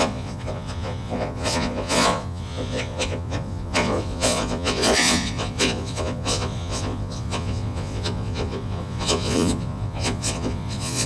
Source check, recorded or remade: remade